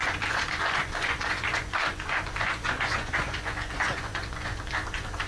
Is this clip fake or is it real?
fake